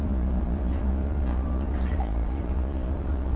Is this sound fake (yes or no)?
yes